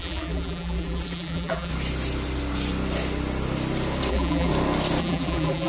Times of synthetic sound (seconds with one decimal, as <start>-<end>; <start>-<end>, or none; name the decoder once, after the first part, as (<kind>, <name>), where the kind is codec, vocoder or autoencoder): 0.0-1.7 (vocoder, BigVGAN v2); 4.1-4.5; 5.0-5.7